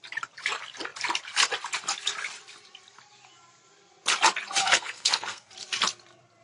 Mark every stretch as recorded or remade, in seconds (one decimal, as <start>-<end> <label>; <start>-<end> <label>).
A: 0.0-4.6 recorded; 4.6-5.5 remade; 5.5-6.4 recorded